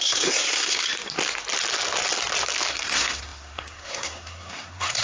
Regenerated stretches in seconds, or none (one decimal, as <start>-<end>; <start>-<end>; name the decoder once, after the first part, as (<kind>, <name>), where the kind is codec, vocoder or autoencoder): 0.0-0.9 (codec, SNAC); 2.7-5.0